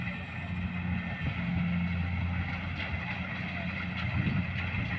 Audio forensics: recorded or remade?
recorded